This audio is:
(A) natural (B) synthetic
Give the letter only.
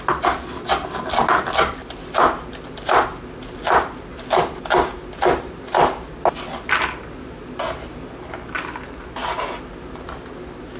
A